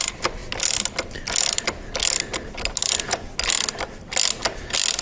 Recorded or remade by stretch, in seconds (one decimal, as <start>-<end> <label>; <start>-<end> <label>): 0.0-5.0 recorded